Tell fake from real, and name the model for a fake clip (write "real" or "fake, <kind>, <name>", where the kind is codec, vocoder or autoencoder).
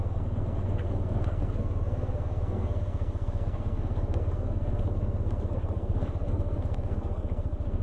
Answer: fake, codec, SNAC